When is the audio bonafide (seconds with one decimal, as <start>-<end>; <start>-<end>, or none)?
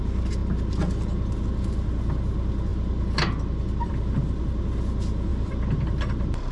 0.0-2.7; 4.4-5.3